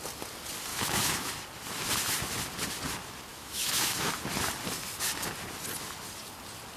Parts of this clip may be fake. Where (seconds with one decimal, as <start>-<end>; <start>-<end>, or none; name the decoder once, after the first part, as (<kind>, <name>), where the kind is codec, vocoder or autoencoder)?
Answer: 0.7-1.3 (autoencoder, DAC-VAE); 3.3-4.1